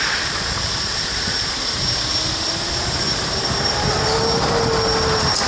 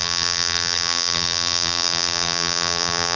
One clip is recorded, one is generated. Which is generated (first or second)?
second